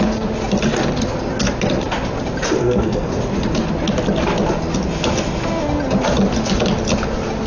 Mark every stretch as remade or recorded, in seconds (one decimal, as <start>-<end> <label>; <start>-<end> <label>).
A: 0.0-2.6 recorded; 2.6-3.1 remade; 3.1-7.5 recorded